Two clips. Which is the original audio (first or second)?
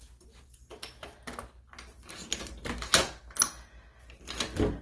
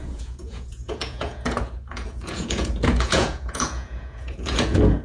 first